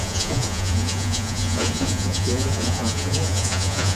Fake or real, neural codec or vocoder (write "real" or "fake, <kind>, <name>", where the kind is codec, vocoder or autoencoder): fake, vocoder, Vocos